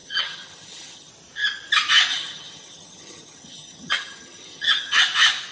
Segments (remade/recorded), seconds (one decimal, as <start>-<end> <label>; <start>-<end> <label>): 0.0-1.1 remade; 1.1-2.1 recorded; 2.1-5.0 remade; 5.0-5.5 recorded